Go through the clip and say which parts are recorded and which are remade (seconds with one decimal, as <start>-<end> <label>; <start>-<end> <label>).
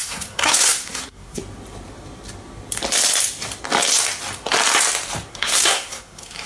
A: 0.0-1.4 remade; 1.4-5.3 recorded; 5.3-6.5 remade